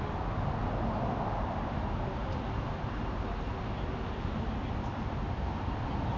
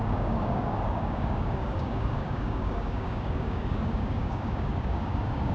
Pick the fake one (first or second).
second